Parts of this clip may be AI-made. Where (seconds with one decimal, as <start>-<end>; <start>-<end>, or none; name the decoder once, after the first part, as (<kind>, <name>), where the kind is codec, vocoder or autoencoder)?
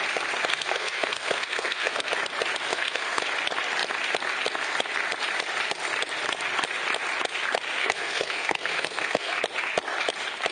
0.5-2.1 (codec, SNAC); 2.7-3.2; 7.8-9.4